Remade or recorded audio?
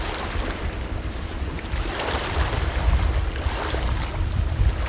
recorded